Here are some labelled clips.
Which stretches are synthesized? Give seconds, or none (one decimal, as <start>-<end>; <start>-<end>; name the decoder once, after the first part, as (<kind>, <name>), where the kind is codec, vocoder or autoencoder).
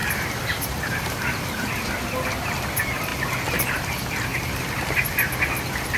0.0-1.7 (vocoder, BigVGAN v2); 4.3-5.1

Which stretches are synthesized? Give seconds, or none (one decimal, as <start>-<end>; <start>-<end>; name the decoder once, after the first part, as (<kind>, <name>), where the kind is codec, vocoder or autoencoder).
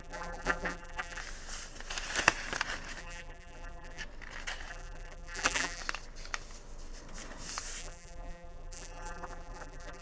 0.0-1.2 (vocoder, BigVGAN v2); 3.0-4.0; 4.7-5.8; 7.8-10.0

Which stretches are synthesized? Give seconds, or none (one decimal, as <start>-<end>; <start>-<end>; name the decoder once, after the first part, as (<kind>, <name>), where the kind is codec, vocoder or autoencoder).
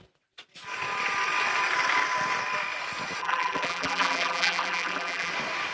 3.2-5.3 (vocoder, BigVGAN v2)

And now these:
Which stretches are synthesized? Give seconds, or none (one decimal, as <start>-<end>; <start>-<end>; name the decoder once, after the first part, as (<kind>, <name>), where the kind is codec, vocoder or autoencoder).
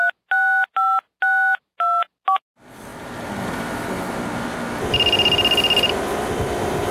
none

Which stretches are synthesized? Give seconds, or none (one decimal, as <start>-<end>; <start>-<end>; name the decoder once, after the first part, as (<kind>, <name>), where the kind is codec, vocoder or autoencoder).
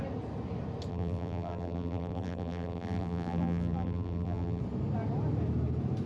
0.9-4.6 (vocoder, BigVGAN v2)